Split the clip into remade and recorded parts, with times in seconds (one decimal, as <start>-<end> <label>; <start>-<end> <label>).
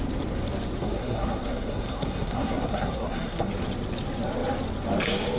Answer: 0.0-0.8 recorded; 0.8-3.5 remade; 3.5-5.4 recorded